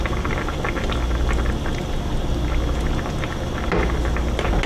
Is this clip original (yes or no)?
yes